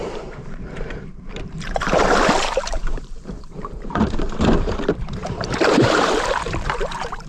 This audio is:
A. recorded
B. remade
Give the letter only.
B